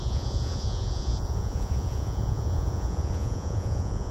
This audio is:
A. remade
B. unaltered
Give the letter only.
A